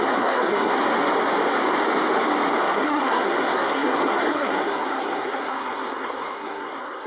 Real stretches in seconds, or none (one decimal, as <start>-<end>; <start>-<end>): 0.8-2.6